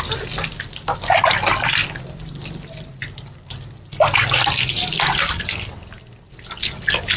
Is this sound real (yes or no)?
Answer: yes